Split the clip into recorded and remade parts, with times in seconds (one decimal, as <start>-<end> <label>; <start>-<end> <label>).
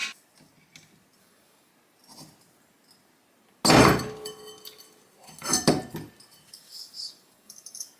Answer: 0.0-1.2 recorded; 1.2-1.7 remade; 1.7-6.5 recorded; 6.5-8.0 remade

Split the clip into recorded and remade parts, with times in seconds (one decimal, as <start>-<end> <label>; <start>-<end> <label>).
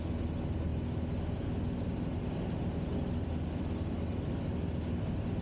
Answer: 0.0-5.4 recorded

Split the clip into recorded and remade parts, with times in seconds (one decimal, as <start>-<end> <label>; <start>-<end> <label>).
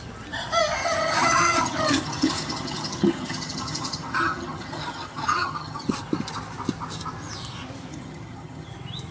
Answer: 0.0-0.8 recorded; 0.8-5.9 remade; 5.9-7.9 recorded; 7.9-8.7 remade; 8.7-9.1 recorded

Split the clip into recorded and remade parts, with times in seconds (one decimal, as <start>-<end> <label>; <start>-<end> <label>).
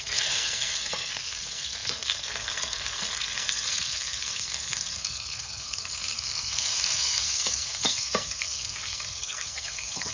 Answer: 0.0-10.1 remade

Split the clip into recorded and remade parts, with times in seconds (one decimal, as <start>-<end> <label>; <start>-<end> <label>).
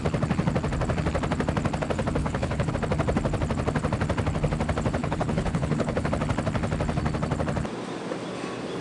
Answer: 0.0-2.2 recorded; 2.2-2.7 remade; 2.7-5.0 recorded; 5.0-6.1 remade; 6.1-8.8 recorded